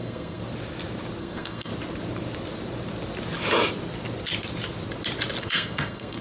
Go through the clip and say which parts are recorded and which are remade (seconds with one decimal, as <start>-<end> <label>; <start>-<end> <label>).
0.0-0.4 remade; 0.4-1.2 recorded; 1.2-1.7 remade; 1.7-5.4 recorded; 5.4-6.2 remade

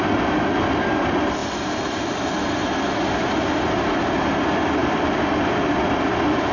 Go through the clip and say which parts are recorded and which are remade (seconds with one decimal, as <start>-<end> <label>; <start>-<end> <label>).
0.0-1.4 recorded; 1.4-4.3 remade; 4.3-4.8 recorded; 4.8-6.5 remade